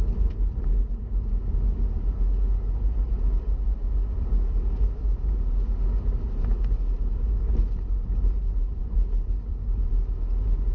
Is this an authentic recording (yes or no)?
yes